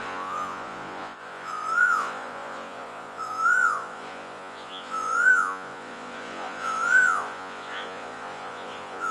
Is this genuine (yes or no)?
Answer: no